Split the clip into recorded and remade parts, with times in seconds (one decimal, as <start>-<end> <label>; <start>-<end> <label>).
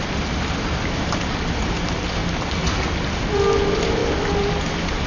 0.0-5.1 recorded